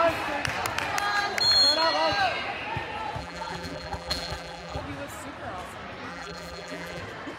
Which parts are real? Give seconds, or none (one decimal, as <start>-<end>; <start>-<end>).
0.0-3.2; 4.8-6.1; 7.0-7.4